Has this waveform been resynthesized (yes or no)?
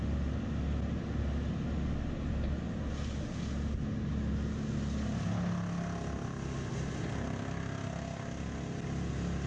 no